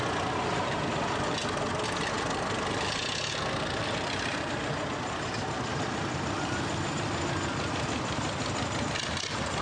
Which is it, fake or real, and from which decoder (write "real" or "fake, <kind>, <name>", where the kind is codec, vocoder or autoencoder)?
real